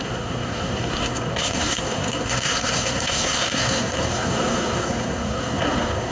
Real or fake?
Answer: fake